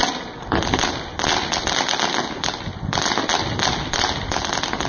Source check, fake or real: real